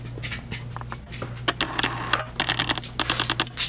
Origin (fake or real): real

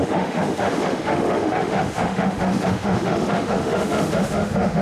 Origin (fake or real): fake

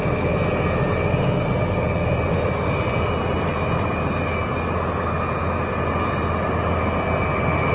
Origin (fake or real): real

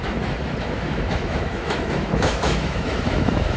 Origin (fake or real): fake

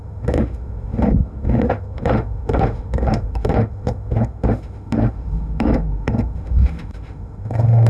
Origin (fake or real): fake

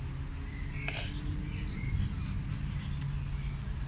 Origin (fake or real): real